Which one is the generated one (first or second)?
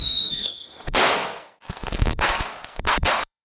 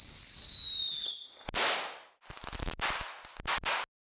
first